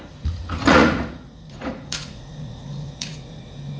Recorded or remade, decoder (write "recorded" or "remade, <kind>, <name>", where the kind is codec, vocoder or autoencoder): remade, vocoder, Vocos